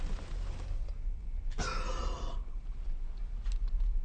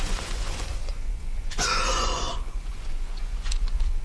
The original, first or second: first